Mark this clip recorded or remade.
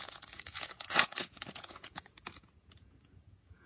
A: remade